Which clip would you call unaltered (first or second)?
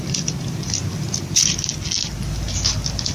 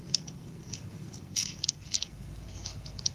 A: first